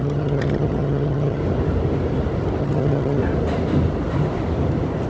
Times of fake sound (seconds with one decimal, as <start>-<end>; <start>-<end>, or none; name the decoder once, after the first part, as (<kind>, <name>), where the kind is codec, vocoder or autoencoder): 0.0-1.4 (vocoder, HiFi-GAN); 2.6-3.2